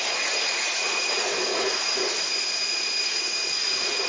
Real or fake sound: fake